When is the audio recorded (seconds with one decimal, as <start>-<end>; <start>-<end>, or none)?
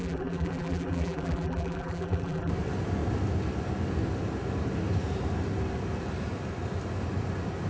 2.5-7.7